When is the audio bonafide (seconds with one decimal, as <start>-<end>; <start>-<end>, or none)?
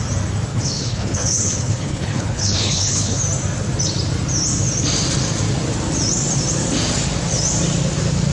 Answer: 0.0-0.5; 3.2-8.3